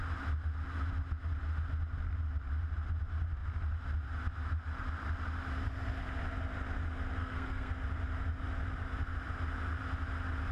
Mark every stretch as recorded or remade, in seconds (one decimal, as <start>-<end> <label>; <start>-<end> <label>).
0.0-7.2 recorded; 7.2-7.7 remade; 7.7-10.5 recorded